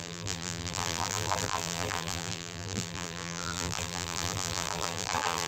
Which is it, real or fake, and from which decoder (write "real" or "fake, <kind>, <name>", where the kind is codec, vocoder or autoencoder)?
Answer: fake, vocoder, BigVGAN v2